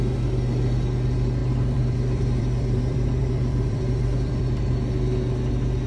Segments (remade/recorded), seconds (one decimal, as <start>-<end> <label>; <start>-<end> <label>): 0.0-1.4 recorded; 1.4-4.9 remade; 4.9-5.9 recorded